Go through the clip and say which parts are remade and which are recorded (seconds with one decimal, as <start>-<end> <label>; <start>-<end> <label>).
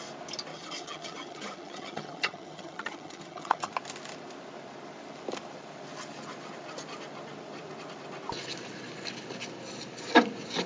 0.0-0.5 recorded; 0.5-3.7 remade; 3.7-10.7 recorded